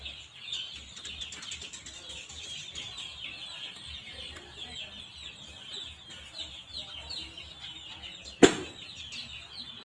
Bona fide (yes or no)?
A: yes